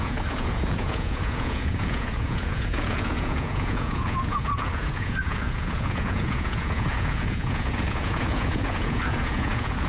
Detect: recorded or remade remade